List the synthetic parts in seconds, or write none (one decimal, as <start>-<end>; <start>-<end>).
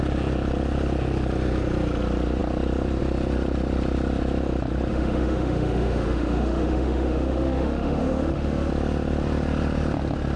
4.9-8.7